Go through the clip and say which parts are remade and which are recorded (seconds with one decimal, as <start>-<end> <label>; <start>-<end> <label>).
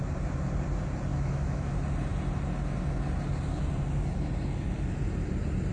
0.0-1.1 recorded; 1.1-1.7 remade; 1.7-5.7 recorded